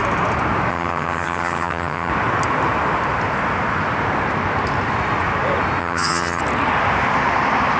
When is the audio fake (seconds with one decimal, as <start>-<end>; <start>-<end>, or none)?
0.7-2.1; 5.8-6.4